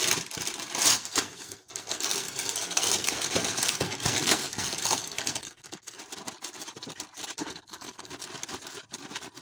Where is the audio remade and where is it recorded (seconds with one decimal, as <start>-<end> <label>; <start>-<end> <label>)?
0.0-0.9 recorded; 0.9-6.0 remade; 6.0-7.4 recorded; 7.4-8.1 remade; 8.1-9.4 recorded

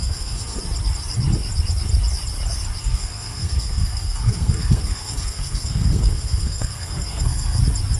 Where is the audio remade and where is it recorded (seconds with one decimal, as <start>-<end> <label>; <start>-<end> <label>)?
0.0-0.6 remade; 0.6-2.8 recorded; 2.8-7.6 remade; 7.6-8.0 recorded

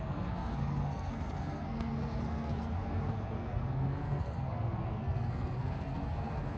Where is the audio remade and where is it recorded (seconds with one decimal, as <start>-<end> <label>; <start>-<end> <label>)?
0.0-6.6 remade